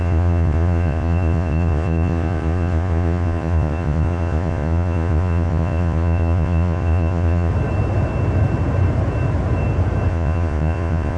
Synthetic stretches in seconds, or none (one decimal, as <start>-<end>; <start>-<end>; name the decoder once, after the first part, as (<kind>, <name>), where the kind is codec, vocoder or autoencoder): 0.0-7.5 (vocoder, Vocos); 10.1-11.2